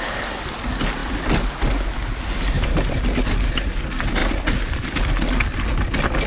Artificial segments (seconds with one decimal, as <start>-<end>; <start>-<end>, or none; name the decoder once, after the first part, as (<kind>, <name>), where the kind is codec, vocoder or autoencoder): none